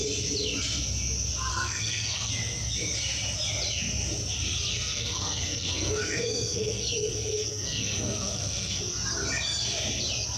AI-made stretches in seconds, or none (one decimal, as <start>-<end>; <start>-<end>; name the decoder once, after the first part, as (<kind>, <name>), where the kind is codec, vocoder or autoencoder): 1.5-2.3 (codec, SNAC); 4.7-8.8